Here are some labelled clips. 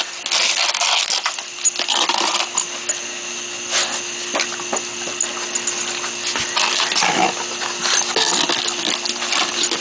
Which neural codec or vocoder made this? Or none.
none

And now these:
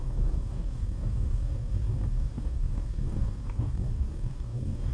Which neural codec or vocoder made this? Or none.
codec, DAC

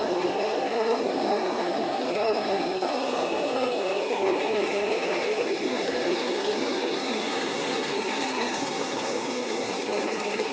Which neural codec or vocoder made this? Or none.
codec, SNAC